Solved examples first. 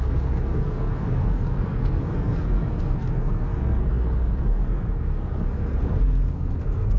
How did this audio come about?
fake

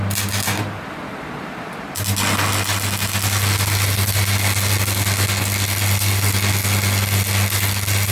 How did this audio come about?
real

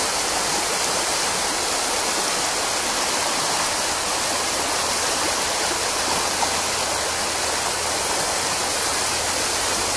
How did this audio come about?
real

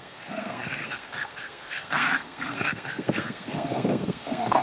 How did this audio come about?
fake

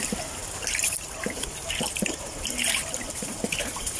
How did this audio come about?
real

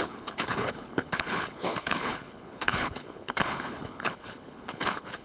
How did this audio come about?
fake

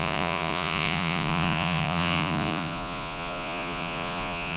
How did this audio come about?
fake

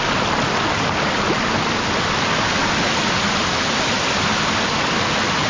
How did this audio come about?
real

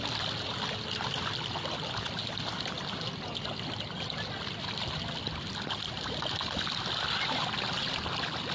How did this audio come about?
real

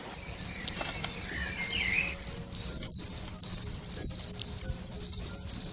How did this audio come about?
fake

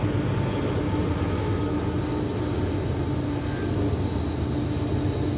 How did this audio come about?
real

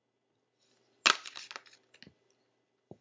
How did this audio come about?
real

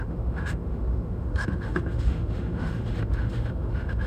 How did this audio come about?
fake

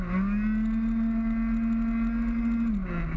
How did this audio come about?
real